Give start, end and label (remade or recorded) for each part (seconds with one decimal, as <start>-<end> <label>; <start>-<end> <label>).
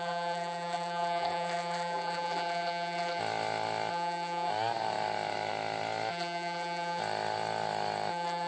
0.0-3.2 remade; 3.2-3.9 recorded; 3.9-4.5 remade; 4.5-6.1 recorded; 6.1-7.0 remade; 7.0-8.1 recorded; 8.1-8.5 remade